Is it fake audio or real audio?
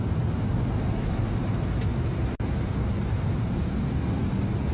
real